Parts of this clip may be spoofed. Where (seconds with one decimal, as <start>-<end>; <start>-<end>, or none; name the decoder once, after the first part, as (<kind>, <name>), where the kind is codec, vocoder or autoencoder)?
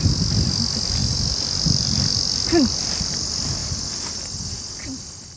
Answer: 1.0-2.4 (vocoder, BigVGAN v2)